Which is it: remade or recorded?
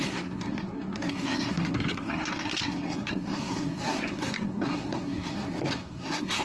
remade